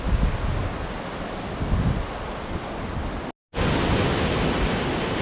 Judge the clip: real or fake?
real